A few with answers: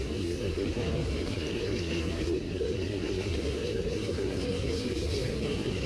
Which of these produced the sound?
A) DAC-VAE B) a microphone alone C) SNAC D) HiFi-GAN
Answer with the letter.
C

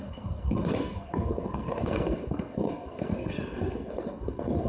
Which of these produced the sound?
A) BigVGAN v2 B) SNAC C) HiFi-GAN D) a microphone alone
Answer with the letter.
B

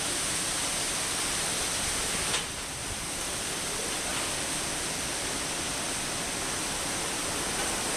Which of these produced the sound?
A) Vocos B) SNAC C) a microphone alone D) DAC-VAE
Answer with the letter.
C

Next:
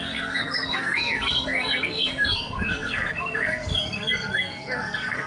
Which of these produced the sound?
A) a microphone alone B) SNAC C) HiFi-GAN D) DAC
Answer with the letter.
B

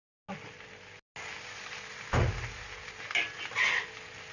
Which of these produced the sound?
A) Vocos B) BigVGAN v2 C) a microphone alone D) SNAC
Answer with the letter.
C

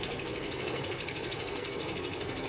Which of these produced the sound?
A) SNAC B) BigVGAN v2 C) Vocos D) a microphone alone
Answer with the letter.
A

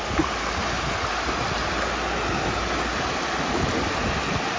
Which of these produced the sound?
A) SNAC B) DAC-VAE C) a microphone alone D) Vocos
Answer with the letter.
C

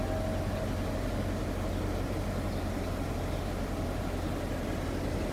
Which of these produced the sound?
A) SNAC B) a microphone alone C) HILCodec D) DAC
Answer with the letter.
B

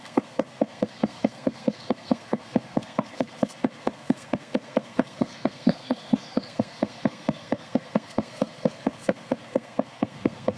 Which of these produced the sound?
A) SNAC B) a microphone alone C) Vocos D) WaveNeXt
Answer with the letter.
A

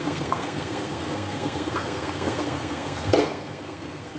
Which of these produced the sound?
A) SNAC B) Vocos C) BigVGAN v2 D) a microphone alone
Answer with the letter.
A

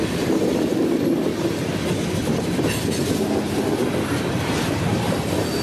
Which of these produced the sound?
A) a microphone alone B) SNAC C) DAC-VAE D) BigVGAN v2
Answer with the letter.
A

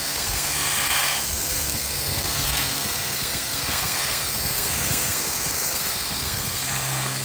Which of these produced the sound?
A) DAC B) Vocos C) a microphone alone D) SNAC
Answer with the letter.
D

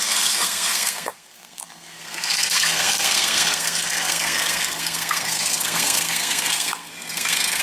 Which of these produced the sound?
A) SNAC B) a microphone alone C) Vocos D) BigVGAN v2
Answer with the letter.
A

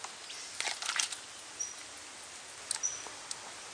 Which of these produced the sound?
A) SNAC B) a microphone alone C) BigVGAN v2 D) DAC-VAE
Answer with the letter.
B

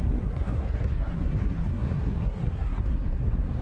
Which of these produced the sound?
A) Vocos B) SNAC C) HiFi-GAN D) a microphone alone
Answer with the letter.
B